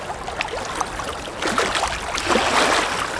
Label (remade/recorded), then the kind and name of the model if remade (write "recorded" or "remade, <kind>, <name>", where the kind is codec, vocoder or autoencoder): recorded